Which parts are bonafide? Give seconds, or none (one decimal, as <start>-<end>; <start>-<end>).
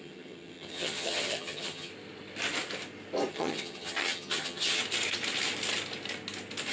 1.9-3.3; 4.8-6.7